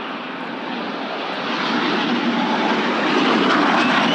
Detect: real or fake real